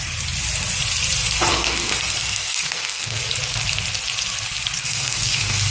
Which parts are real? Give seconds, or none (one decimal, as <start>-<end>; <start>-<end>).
0.0-1.5; 3.2-4.8